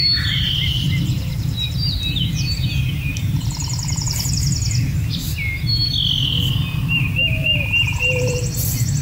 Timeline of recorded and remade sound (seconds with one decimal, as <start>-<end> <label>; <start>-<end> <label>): 0.0-4.3 remade; 4.3-6.8 recorded; 6.8-8.4 remade; 8.4-9.0 recorded